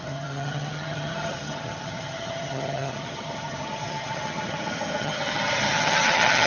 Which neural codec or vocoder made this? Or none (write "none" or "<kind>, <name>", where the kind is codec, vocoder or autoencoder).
vocoder, HiFi-GAN